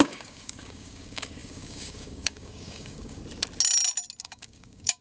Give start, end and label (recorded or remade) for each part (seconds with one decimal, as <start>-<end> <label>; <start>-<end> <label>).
0.0-3.2 remade; 3.2-4.2 recorded; 4.2-5.0 remade